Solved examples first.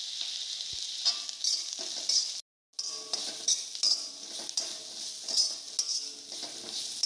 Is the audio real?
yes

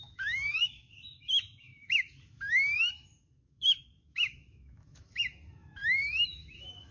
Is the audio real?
no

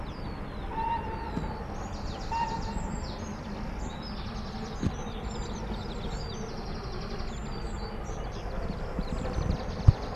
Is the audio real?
yes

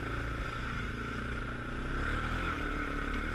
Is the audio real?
yes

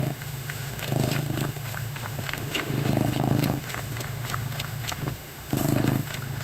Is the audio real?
no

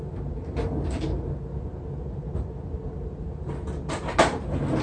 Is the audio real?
yes